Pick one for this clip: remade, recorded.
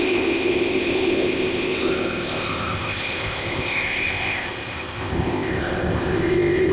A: remade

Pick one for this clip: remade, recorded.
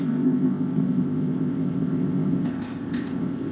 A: remade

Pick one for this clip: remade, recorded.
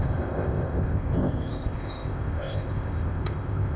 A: remade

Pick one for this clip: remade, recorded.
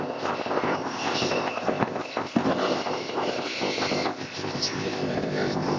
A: remade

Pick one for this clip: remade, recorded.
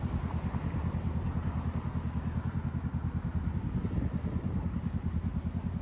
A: recorded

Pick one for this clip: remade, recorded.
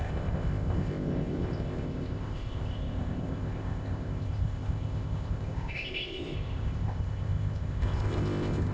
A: remade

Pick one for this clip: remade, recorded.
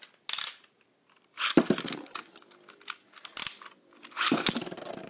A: recorded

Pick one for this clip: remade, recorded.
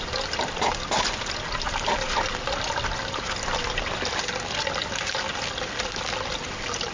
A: recorded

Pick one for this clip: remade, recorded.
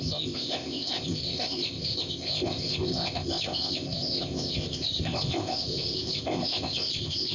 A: remade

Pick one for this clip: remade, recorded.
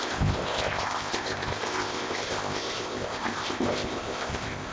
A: remade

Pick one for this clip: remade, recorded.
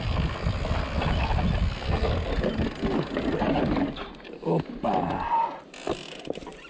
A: recorded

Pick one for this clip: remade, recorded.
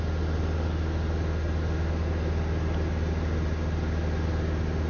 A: recorded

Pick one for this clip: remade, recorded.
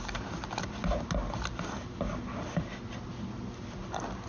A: recorded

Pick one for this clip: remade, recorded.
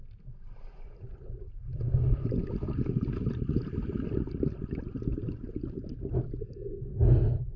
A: recorded